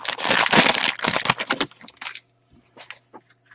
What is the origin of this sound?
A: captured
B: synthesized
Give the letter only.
A